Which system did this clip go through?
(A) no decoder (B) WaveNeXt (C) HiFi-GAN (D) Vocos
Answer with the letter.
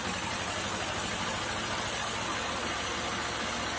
A